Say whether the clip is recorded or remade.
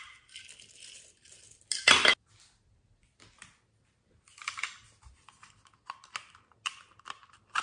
recorded